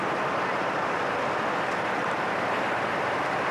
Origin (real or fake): real